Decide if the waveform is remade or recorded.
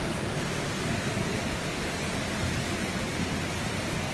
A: recorded